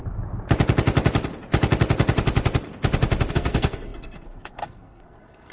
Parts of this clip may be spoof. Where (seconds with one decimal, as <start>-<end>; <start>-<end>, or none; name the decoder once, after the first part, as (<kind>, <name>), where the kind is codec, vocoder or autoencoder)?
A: 3.3-5.5 (codec, SNAC)